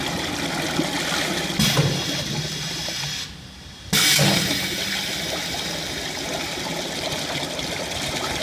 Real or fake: real